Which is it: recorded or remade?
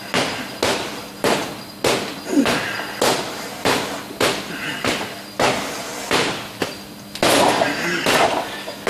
recorded